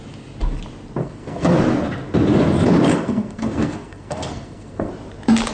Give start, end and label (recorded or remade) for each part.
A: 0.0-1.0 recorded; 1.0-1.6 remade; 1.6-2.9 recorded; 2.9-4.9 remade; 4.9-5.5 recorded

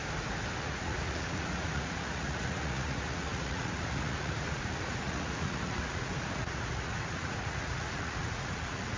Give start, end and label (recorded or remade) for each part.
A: 0.0-0.6 recorded; 0.6-9.0 remade

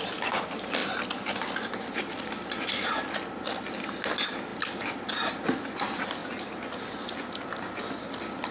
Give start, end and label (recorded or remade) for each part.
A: 0.0-8.5 recorded

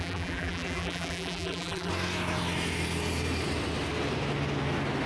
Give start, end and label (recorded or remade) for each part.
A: 0.0-1.9 remade; 1.9-5.1 recorded